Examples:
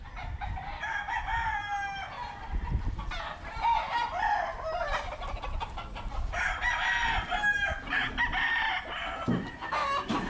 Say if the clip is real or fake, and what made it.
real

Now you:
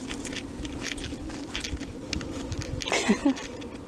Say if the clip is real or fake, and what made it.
real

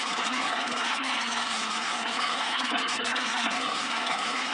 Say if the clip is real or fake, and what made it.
fake, codec, SNAC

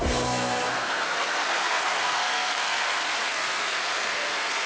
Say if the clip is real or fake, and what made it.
fake, codec, SNAC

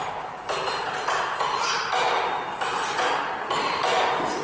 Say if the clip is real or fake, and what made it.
real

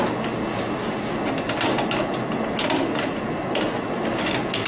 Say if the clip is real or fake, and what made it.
real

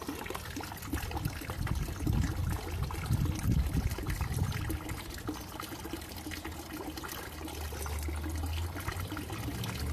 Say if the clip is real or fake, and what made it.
real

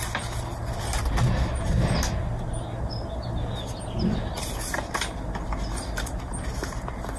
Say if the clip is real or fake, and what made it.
real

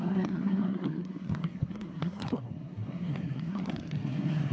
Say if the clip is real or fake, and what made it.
fake, codec, SNAC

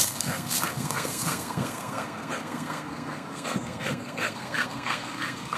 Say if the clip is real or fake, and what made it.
fake, codec, SNAC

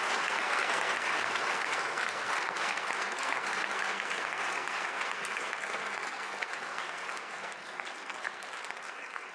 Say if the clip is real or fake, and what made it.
fake, codec, SNAC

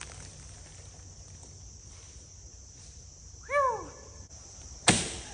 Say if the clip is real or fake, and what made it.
real